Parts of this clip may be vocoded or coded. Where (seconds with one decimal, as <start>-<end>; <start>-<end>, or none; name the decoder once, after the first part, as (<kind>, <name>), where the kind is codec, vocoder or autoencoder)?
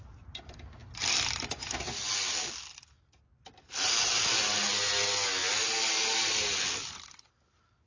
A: none